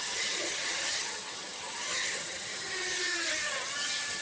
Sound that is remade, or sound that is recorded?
remade